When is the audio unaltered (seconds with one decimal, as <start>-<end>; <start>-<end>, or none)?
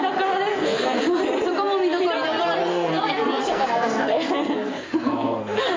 0.0-0.5; 1.0-2.7